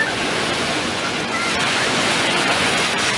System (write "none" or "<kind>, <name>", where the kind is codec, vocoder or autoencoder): vocoder, Vocos